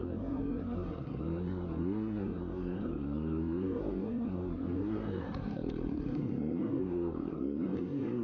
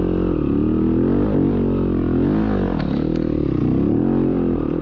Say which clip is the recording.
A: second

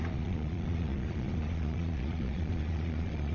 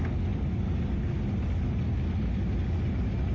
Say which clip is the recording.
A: second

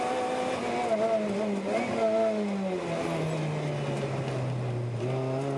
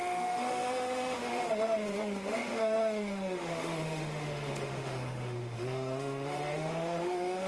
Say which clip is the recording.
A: first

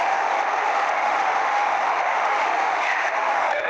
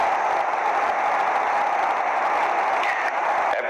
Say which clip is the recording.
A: second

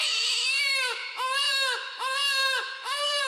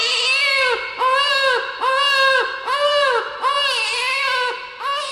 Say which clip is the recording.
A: second